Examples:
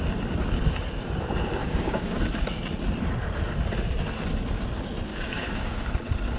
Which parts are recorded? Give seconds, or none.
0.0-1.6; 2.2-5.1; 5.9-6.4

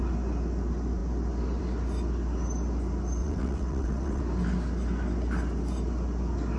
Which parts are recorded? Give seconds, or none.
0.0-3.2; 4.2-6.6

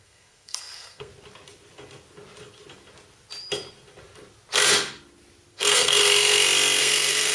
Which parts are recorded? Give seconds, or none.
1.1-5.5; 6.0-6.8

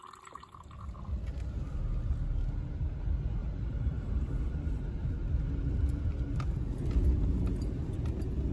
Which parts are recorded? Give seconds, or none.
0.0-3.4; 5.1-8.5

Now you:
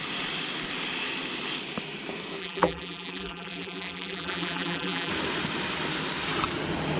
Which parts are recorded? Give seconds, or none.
0.0-2.4; 5.1-7.0

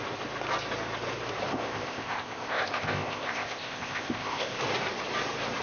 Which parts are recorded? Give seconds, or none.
0.0-1.5; 4.6-5.6

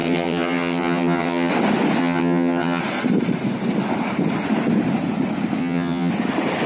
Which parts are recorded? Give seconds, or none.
1.5-2.0; 2.8-5.6; 6.1-6.7

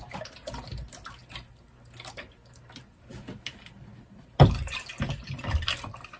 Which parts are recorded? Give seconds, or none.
0.0-6.2